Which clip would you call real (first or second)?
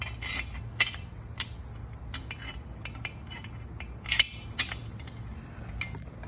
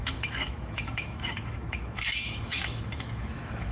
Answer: first